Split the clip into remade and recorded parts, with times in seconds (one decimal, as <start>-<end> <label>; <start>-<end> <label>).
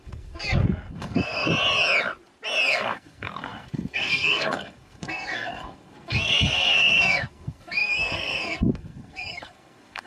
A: 0.0-1.5 remade; 1.5-2.7 recorded; 2.7-10.1 remade